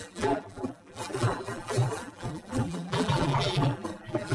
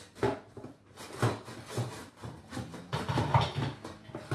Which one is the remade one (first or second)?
first